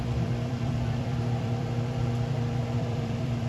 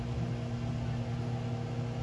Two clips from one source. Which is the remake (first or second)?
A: first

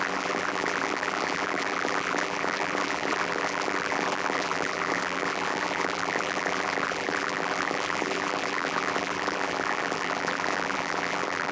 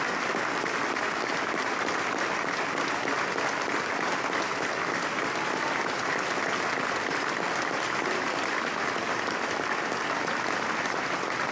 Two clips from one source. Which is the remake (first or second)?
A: first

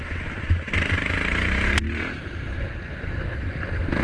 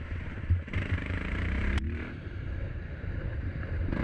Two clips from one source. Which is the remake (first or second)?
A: second